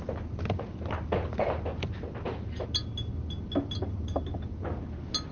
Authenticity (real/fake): real